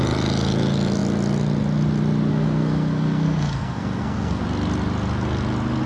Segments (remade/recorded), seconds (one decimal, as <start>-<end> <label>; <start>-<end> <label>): 0.0-2.3 recorded; 2.3-4.4 remade; 4.4-5.9 recorded